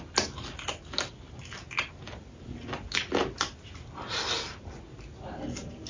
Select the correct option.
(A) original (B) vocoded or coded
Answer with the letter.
A